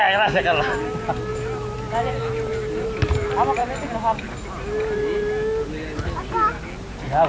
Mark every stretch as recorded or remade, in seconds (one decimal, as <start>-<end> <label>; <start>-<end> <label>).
0.0-7.3 recorded

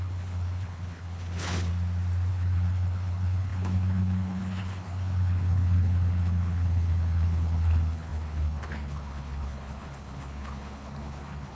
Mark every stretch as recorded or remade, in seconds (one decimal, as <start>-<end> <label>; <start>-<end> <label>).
0.0-1.7 remade; 1.7-2.3 recorded; 2.3-11.5 remade